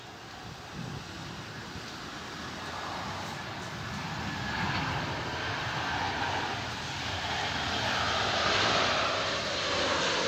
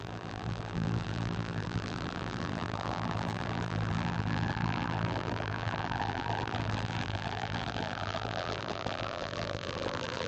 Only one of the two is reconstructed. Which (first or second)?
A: second